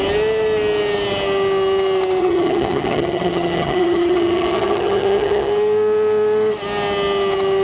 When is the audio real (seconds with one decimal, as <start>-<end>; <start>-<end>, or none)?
0.0-2.2; 5.5-7.6